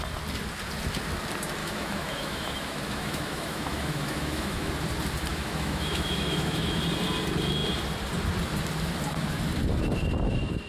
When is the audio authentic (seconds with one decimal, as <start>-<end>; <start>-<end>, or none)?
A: 0.0-1.6; 4.7-5.3; 6.8-10.7